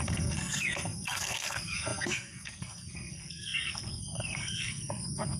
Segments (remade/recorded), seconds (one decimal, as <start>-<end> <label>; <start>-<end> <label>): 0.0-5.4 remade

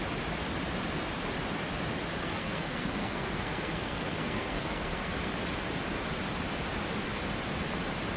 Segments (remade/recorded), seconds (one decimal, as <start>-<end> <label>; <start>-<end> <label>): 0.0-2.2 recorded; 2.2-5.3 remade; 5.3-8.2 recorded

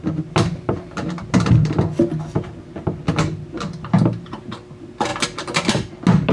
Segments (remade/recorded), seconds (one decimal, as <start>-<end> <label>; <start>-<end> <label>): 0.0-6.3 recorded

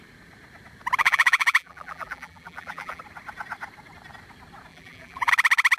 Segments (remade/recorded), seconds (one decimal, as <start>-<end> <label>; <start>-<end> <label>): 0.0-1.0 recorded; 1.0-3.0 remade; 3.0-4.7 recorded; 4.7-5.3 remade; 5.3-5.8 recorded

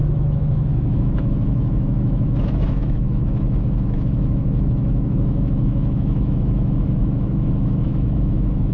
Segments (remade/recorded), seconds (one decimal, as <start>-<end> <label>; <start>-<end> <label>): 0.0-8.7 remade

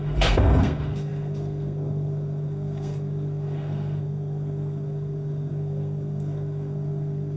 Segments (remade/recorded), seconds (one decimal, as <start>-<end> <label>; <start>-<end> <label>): 0.0-7.4 remade

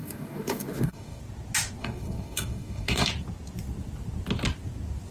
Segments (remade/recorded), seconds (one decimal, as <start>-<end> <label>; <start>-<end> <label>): 0.0-1.2 remade; 1.2-1.8 recorded; 1.8-3.1 remade; 3.1-5.1 recorded

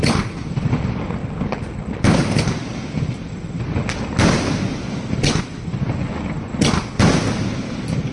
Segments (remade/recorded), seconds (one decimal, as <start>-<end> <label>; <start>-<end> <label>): 0.0-8.1 recorded